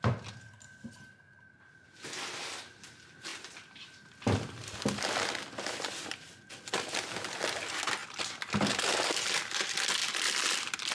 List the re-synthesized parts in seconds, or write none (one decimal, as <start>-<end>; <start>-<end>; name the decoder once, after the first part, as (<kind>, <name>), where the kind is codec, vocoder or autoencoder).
3.3-3.9 (vocoder, BigVGAN v2); 10.0-10.9

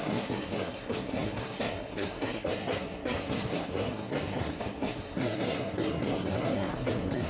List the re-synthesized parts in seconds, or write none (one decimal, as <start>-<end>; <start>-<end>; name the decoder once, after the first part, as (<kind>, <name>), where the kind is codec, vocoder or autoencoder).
0.0-7.3 (codec, SNAC)

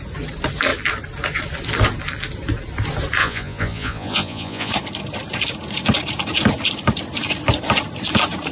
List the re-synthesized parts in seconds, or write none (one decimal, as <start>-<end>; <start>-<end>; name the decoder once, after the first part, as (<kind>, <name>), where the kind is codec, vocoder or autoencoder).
3.2-4.7 (vocoder, Vocos)

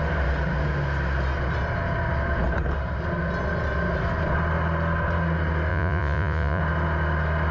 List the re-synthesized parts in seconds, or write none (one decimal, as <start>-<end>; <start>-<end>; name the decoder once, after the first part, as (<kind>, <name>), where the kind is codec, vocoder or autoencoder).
5.7-6.6 (vocoder, Vocos)